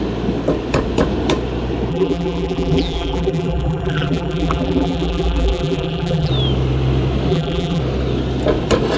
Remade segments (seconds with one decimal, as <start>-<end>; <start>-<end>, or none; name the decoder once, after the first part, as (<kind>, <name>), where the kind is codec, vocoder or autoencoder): 1.9-6.3 (vocoder, BigVGAN v2); 7.3-7.8